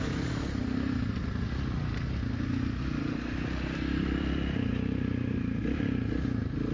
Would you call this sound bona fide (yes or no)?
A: yes